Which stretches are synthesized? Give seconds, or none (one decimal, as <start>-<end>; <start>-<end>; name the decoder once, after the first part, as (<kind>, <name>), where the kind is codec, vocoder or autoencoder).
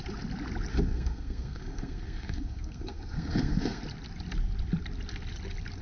0.7-3.8 (codec, SNAC)